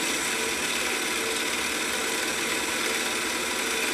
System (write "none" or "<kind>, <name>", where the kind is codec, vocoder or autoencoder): none